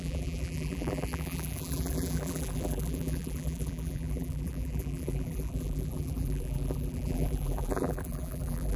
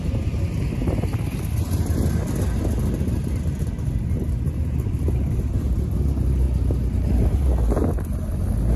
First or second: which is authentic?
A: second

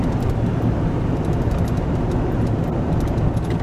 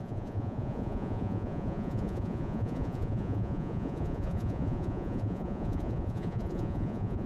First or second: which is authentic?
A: first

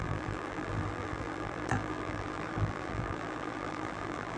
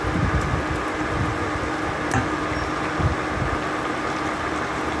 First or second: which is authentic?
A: second